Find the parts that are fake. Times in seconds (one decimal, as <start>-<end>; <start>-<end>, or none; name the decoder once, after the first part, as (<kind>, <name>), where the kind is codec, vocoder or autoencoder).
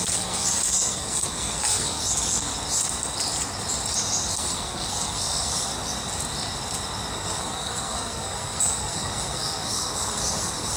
0.0-2.5 (codec, SNAC); 4.3-5.7; 7.1-10.8